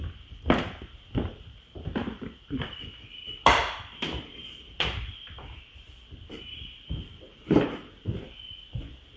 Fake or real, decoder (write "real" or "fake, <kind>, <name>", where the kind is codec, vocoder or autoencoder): fake, vocoder, BigVGAN v2